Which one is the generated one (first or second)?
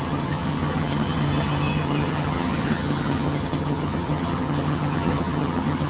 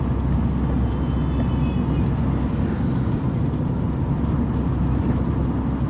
first